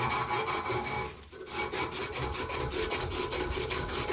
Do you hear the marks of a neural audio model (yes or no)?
no